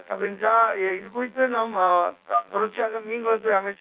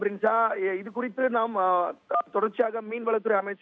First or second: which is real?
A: second